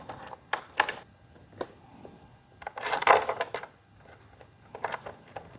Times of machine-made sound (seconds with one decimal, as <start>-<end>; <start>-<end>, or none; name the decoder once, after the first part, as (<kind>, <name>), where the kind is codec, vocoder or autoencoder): none